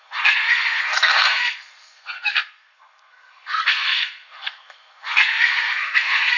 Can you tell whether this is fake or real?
fake